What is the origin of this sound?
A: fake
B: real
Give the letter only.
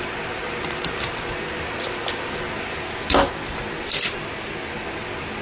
B